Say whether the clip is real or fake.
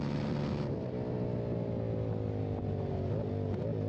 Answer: real